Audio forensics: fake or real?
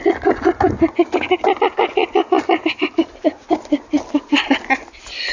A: real